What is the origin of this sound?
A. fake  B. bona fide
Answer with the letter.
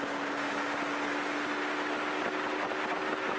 B